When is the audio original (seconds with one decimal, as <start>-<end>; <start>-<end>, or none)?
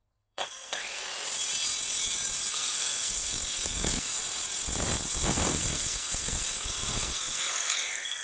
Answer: 1.1-2.5; 4.2-5.1